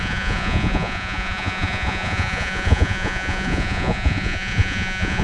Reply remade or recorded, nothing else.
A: remade